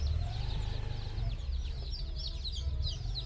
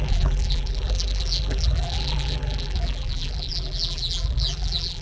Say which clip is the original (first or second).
first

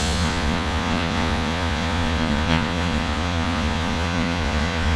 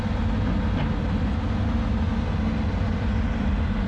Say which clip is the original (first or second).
second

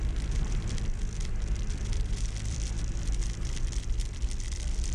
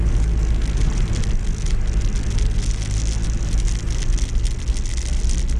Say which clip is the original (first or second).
second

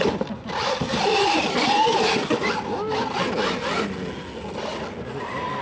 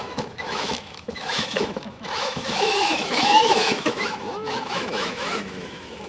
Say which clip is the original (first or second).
first